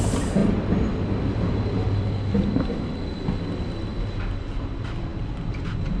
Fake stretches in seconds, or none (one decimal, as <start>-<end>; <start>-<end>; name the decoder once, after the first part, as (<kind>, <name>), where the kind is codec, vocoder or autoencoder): none